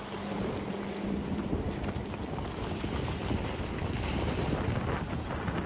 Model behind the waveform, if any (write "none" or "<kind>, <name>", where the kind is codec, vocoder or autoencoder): none